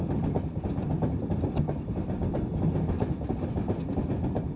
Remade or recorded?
recorded